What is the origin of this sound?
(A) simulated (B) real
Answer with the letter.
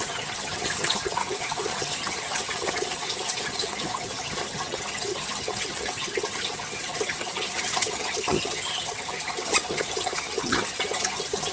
A